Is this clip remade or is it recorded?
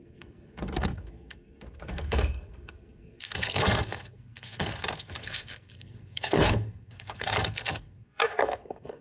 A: remade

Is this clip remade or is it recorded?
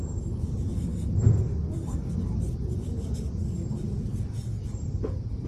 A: recorded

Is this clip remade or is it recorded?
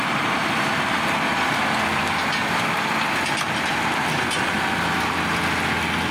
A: recorded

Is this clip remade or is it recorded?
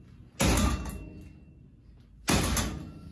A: recorded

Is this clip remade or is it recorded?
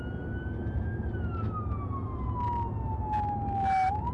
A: recorded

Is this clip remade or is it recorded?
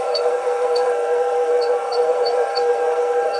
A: remade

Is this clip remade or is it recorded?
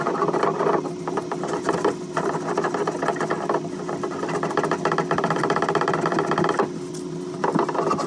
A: recorded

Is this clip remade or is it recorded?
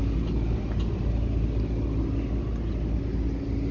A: recorded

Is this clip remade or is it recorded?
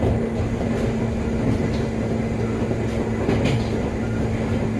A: recorded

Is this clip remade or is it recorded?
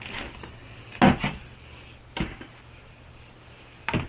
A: recorded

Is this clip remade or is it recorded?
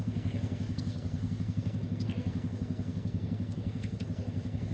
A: remade